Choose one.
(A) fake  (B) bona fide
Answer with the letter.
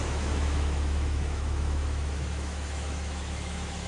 A